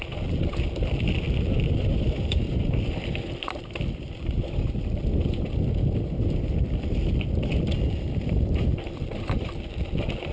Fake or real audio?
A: fake